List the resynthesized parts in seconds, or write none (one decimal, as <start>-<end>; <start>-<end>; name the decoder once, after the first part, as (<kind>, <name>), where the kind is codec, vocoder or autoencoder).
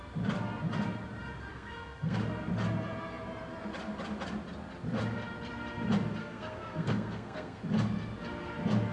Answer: 1.5-2.2 (codec, SNAC); 6.2-7.6